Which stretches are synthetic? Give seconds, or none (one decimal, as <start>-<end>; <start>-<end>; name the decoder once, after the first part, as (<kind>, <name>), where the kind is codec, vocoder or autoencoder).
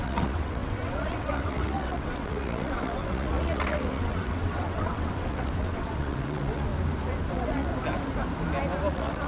0.0-6.7 (vocoder, WaveNeXt); 7.3-7.7; 8.9-9.3